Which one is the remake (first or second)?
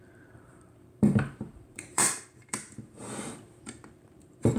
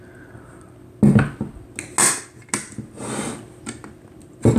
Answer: first